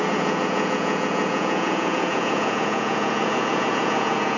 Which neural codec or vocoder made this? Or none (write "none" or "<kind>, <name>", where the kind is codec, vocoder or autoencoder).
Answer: vocoder, Vocos